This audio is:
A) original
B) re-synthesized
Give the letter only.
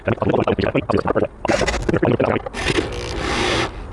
A